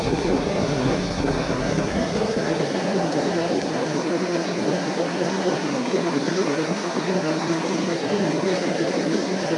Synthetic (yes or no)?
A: yes